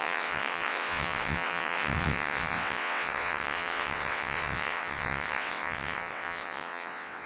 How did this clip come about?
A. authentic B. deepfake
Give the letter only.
B